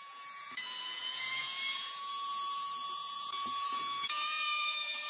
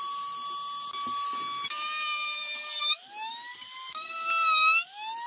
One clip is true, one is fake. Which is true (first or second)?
second